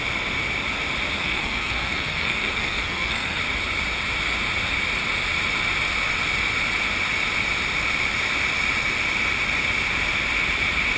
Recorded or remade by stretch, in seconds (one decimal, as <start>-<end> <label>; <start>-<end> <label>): 0.0-1.2 recorded; 1.2-3.4 remade; 3.4-11.0 recorded